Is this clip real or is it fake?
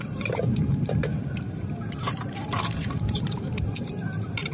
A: fake